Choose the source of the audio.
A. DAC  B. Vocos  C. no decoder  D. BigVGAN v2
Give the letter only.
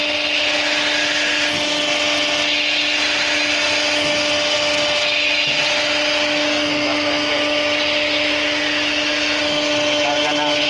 C